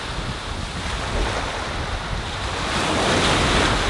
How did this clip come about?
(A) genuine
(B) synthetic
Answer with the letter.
A